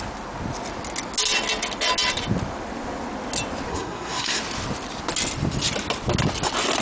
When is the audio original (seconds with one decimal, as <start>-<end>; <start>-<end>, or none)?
0.0-3.7; 4.4-6.8